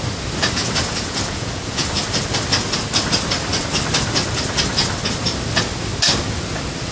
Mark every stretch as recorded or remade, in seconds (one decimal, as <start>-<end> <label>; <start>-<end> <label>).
0.0-0.6 recorded; 0.6-2.0 remade; 2.0-6.9 recorded